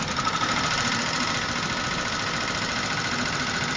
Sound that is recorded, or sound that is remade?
recorded